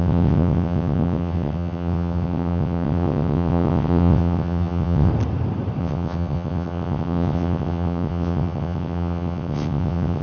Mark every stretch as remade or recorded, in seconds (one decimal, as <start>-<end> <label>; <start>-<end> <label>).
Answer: 0.0-5.1 remade; 5.1-5.8 recorded; 5.8-10.2 remade